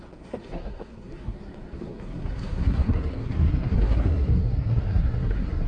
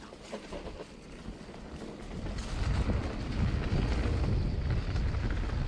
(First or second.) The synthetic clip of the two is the first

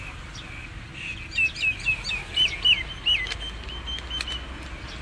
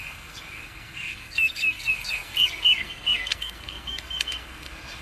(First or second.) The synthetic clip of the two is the second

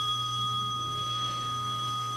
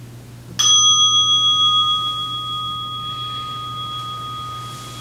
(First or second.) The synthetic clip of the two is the first